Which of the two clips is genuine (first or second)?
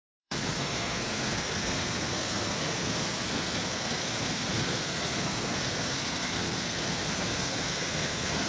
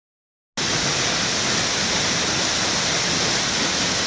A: second